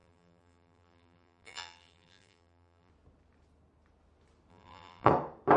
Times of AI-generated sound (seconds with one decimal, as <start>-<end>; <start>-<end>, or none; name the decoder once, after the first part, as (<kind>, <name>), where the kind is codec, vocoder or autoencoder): 0.0-2.9 (vocoder, BigVGAN v2); 4.5-5.1